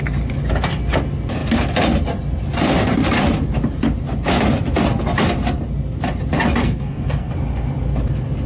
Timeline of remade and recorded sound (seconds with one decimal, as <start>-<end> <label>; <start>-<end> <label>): 0.0-6.6 recorded; 6.6-7.3 remade; 7.3-8.5 recorded